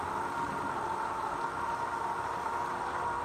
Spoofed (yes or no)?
no